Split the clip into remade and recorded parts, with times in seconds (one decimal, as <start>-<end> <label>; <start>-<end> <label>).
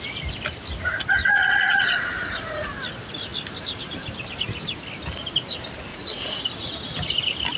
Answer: 0.0-1.3 recorded; 1.3-2.7 remade; 2.7-5.9 recorded; 5.9-6.4 remade; 6.4-7.6 recorded